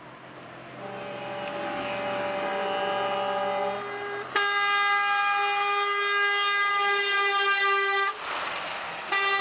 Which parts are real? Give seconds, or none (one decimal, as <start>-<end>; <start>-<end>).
0.0-9.4